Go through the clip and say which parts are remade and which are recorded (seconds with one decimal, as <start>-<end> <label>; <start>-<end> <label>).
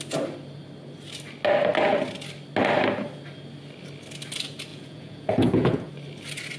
0.0-4.7 recorded; 4.7-5.9 remade; 5.9-6.6 recorded